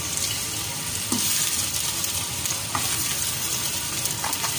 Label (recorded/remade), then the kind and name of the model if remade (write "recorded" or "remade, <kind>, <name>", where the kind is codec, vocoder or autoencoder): remade, vocoder, BigVGAN v2